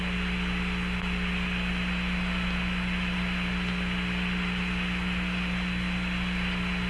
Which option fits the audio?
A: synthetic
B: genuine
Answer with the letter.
B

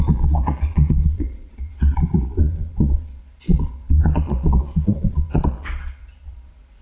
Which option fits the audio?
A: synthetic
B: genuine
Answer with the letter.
A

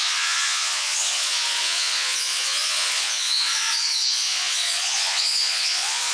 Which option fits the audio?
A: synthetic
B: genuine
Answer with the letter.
A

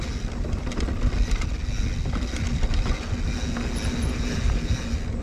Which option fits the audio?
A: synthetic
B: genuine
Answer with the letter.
B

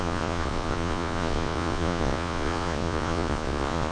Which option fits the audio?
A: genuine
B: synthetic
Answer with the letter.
B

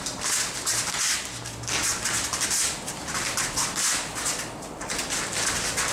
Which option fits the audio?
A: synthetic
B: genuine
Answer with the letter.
B